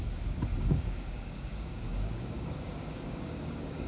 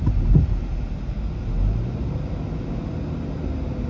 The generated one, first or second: first